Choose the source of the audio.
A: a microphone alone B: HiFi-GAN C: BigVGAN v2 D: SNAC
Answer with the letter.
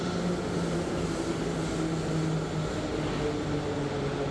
A